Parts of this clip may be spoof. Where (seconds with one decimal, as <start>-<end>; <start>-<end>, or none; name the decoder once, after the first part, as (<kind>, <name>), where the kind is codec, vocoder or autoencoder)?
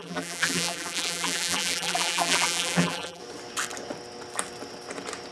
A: 0.0-3.2 (vocoder, BigVGAN v2)